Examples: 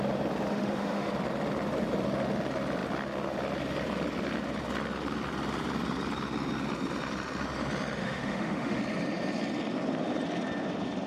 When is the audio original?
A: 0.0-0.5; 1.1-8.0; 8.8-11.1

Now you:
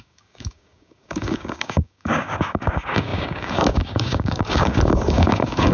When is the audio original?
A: none

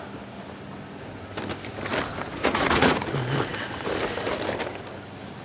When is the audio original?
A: 0.0-2.1; 3.1-5.4

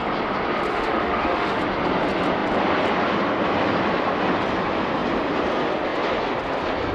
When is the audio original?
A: 0.0-0.7; 1.6-6.9

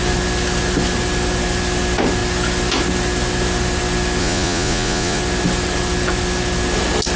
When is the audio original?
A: 0.0-4.2; 5.2-7.2

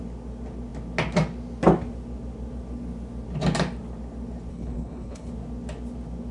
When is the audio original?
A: 0.0-4.5; 5.3-6.3